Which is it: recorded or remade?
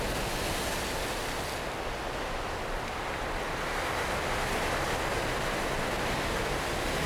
recorded